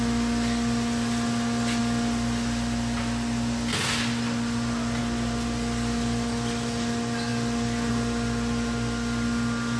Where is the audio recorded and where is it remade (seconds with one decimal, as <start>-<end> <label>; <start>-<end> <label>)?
0.0-9.8 recorded